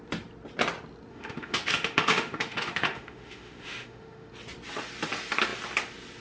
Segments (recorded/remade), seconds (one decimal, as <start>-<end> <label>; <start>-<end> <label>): 0.0-1.1 recorded; 1.1-4.3 remade; 4.3-6.2 recorded